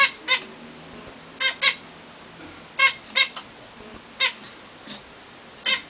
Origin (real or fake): real